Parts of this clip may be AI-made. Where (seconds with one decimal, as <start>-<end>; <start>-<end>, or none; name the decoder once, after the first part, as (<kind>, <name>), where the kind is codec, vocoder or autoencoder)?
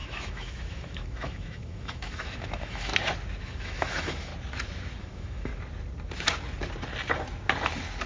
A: 0.0-2.9 (autoencoder, DAC-VAE); 3.4-4.3; 5.0-5.5